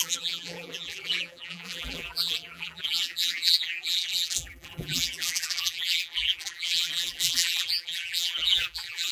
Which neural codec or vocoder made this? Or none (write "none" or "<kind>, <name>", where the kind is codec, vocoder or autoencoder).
vocoder, BigVGAN v2